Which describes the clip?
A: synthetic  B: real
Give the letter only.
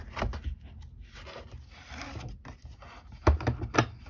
B